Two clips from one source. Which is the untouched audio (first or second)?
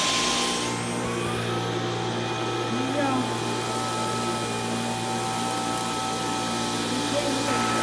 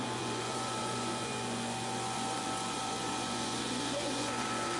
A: first